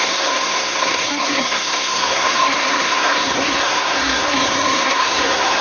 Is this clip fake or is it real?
fake